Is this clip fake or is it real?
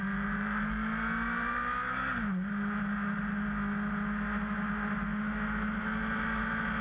real